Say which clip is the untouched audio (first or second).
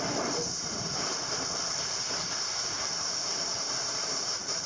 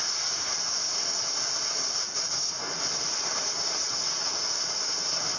second